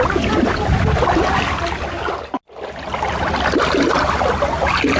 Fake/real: real